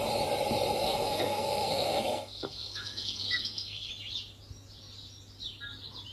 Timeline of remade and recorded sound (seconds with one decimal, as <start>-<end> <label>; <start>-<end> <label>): 0.0-0.8 recorded; 0.8-3.9 remade; 3.9-6.1 recorded

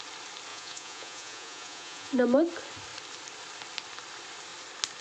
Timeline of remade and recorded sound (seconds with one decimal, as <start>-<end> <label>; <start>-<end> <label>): 0.0-0.5 recorded; 0.5-2.1 remade; 2.1-5.0 recorded

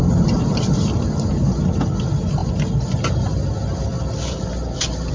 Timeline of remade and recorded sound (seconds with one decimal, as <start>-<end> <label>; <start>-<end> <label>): 0.0-5.1 recorded

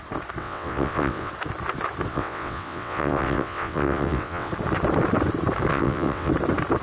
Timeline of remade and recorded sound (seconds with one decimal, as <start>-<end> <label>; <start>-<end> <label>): 0.0-0.4 recorded; 0.4-1.3 remade; 1.3-2.1 recorded; 2.1-4.5 remade; 4.5-5.7 recorded; 5.7-6.3 remade; 6.3-6.8 recorded

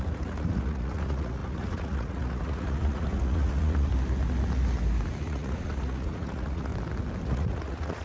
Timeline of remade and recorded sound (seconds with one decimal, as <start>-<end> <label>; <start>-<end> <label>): 0.0-3.9 remade; 3.9-5.2 recorded; 5.2-6.7 remade; 6.7-7.2 recorded; 7.2-8.0 remade